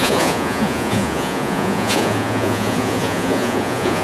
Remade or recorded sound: remade